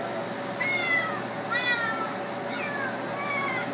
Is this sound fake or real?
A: real